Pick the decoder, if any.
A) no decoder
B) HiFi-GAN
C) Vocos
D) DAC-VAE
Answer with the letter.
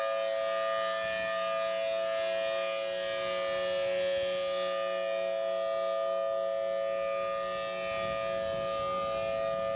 A